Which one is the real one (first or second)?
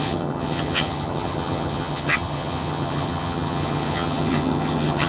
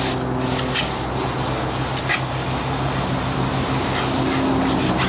second